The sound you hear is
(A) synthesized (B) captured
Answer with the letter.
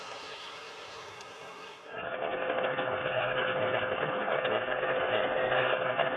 A